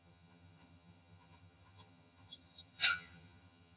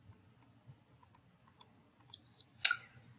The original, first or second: second